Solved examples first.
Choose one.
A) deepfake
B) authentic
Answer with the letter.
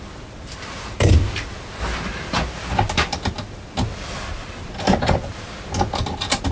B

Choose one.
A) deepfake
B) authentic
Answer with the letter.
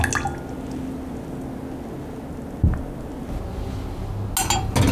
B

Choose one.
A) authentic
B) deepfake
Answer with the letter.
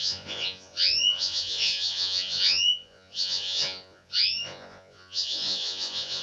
B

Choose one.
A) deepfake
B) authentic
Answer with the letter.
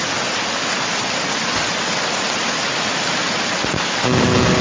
B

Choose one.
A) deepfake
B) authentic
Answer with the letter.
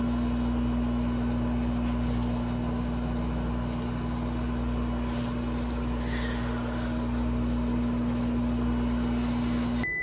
B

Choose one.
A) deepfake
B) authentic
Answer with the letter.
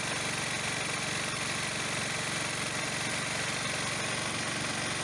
B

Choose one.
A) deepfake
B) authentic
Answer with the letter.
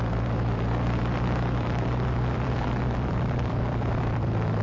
A